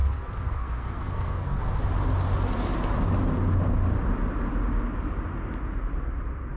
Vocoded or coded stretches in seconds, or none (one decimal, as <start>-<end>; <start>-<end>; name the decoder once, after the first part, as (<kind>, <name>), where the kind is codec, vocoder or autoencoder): 0.0-1.6 (codec, SNAC)